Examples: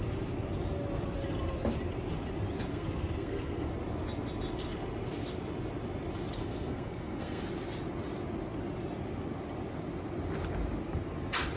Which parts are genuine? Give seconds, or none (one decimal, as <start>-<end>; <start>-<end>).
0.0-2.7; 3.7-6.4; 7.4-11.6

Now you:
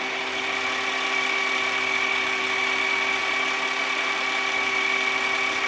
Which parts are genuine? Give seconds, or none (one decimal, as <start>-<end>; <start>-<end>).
3.2-3.8

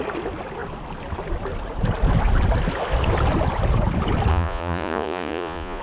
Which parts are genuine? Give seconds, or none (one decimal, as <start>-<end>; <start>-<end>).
0.0-4.3

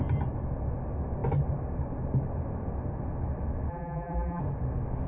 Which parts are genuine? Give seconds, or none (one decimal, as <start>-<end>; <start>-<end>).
0.0-3.7; 4.4-5.1

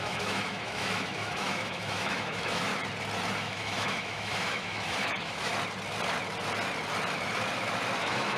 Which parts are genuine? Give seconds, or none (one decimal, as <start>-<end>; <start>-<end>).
2.7-3.4; 5.5-8.0

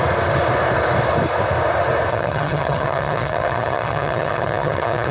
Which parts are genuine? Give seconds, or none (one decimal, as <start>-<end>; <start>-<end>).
0.0-2.1